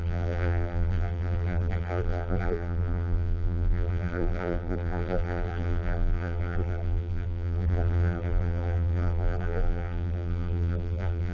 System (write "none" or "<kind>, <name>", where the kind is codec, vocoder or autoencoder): vocoder, BigVGAN v2